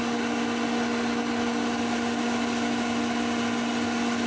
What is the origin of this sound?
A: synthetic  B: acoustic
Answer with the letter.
B